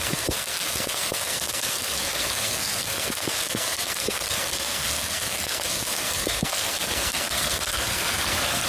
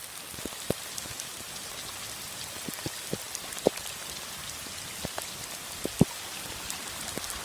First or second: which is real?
second